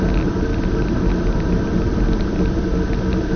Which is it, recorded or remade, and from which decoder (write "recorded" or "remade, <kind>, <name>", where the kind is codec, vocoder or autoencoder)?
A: recorded